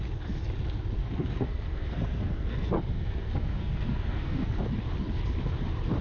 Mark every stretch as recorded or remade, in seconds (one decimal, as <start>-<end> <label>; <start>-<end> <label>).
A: 0.0-1.0 recorded; 1.0-4.6 remade; 4.6-6.0 recorded